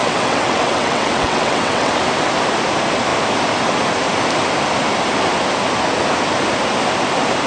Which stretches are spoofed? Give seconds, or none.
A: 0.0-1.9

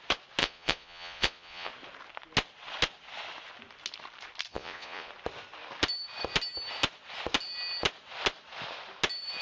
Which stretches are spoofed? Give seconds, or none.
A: 0.4-1.7; 4.5-5.1

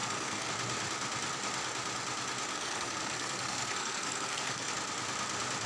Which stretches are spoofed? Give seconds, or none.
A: 0.0-0.5; 2.5-4.7

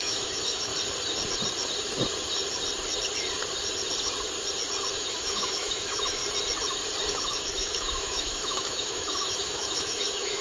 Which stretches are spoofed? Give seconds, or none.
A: 0.0-0.7; 4.9-6.2; 7.1-10.4

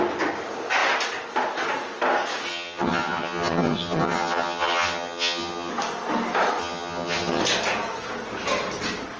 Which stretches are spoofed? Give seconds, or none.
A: 2.5-5.7; 6.6-7.4

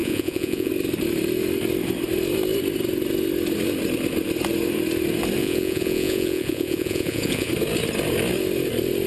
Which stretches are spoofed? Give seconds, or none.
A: 0.0-0.7; 5.4-7.5